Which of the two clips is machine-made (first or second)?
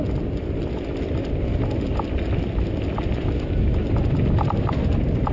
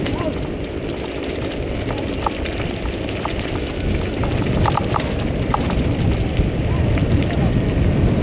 second